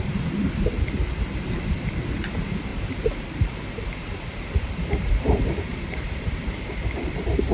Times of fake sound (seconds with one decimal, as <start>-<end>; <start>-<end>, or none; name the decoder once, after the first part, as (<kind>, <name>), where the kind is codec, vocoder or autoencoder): 2.7-6.7 (vocoder, BigVGAN v2)